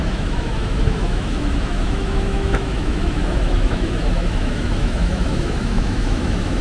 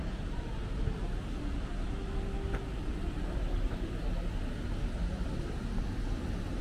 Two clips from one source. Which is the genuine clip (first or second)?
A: second